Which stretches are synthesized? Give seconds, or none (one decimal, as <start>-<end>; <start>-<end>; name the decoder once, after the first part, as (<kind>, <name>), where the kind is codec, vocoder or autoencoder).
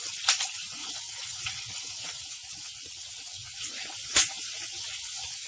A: 0.8-4.1 (vocoder, WaveNeXt); 4.6-5.5